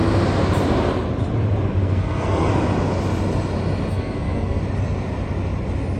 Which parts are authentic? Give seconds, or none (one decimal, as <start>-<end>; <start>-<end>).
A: 0.0-1.8; 2.5-3.9; 4.6-6.0